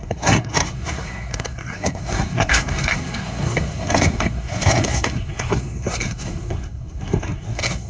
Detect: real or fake fake